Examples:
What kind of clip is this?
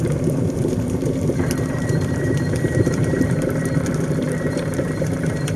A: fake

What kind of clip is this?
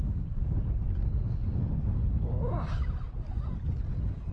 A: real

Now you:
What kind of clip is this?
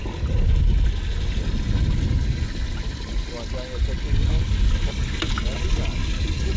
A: real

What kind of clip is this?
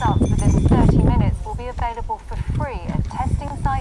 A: real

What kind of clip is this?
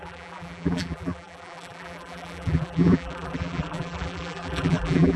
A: fake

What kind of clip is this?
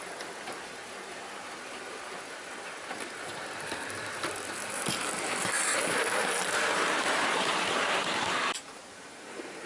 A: fake